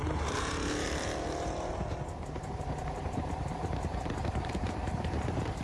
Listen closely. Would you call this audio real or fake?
fake